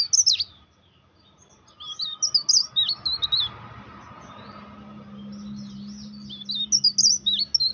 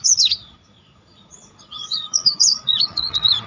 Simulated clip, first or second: second